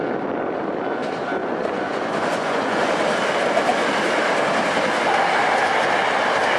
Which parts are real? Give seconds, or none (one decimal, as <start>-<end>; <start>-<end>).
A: 0.0-1.4; 2.9-6.6